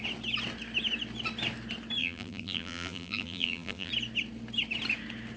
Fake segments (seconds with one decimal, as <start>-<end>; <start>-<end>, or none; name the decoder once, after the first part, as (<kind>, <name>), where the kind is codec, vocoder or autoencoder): 2.0-3.9 (vocoder, BigVGAN v2)